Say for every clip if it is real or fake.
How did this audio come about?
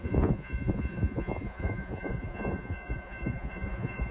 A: fake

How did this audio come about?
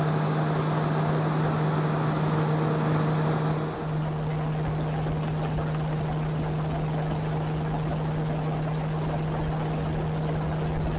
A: real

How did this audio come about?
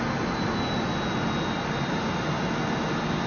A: real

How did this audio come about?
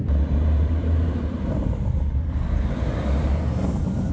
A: fake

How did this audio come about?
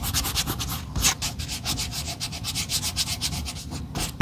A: real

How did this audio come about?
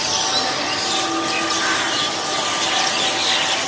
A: real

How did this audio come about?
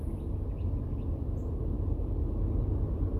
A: real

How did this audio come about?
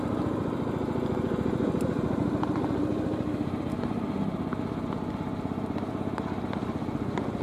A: fake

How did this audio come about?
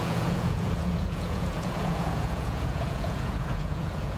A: fake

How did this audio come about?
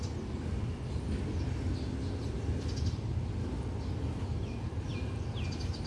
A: real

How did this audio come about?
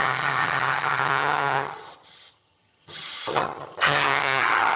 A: fake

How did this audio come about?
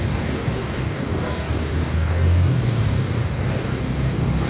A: fake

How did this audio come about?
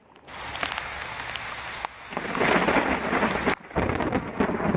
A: real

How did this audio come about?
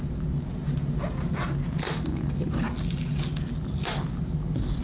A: real